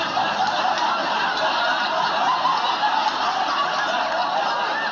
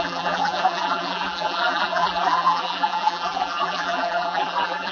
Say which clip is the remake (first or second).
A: second